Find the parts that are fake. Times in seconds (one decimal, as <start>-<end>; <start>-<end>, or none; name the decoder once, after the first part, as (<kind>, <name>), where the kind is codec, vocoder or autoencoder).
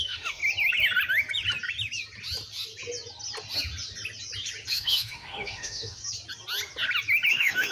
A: 0.0-0.4 (autoencoder, DAC-VAE); 4.7-6.0; 7.3-7.7